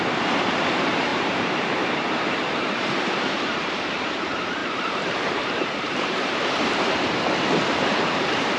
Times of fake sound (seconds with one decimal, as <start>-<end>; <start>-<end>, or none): 0.0-8.6